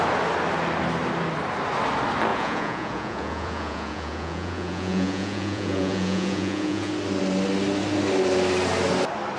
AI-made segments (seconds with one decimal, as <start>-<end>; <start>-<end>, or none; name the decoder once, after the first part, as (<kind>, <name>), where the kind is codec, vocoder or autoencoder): 2.3-6.9 (vocoder, Vocos)